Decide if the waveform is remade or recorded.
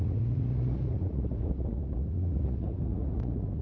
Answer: remade